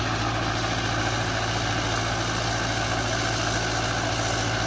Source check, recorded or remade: recorded